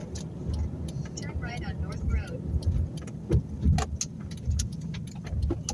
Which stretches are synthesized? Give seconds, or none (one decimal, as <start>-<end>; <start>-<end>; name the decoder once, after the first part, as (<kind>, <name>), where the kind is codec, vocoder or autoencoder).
none